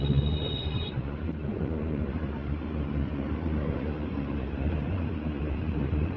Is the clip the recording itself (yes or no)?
no